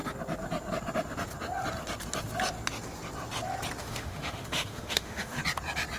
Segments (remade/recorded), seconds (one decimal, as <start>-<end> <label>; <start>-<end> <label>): 0.0-3.8 recorded; 3.8-5.4 remade; 5.4-6.0 recorded